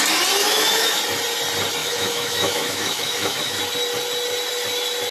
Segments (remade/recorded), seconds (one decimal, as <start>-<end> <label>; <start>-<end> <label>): 0.0-0.4 recorded; 0.4-1.0 remade; 1.0-1.8 recorded; 1.8-3.6 remade; 3.6-5.1 recorded